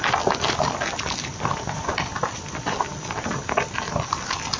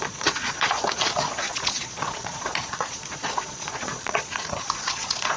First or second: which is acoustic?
first